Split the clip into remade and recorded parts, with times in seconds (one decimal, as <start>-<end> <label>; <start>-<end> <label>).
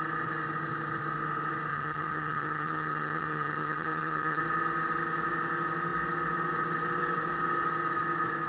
0.0-1.7 recorded; 1.7-4.4 remade; 4.4-8.5 recorded